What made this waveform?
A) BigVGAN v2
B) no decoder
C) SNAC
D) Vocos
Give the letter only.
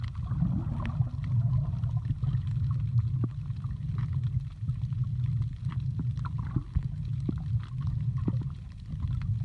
B